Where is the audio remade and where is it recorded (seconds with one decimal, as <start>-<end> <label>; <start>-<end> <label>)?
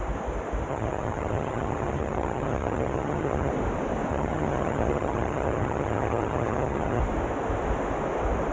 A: 0.0-0.7 recorded; 0.7-3.5 remade; 3.5-4.1 recorded; 4.1-7.0 remade; 7.0-8.5 recorded